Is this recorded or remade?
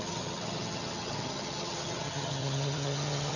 remade